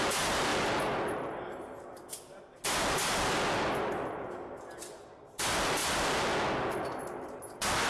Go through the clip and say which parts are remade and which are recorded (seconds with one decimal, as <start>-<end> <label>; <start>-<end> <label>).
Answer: 0.0-7.9 recorded